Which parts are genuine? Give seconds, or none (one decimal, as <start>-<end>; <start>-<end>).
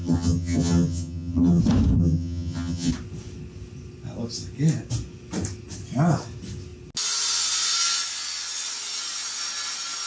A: 1.6-2.0; 2.9-10.1